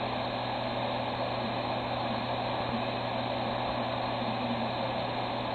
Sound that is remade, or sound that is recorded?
recorded